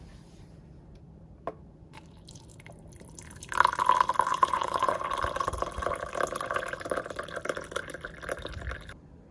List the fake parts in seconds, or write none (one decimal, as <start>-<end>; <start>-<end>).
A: 4.3-5.0